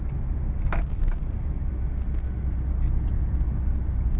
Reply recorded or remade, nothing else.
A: recorded